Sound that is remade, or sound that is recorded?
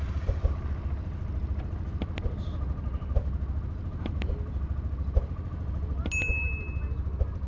recorded